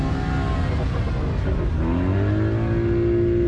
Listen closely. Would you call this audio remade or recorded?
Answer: recorded